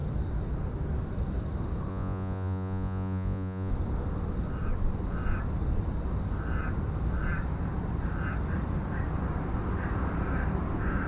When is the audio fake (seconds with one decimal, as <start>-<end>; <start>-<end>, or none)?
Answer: 1.9-3.7